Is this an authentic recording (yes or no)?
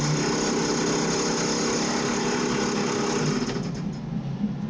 yes